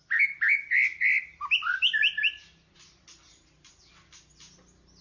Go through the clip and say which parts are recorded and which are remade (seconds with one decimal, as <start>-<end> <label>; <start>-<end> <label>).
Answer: 0.0-0.9 recorded; 0.9-3.9 remade; 3.9-5.0 recorded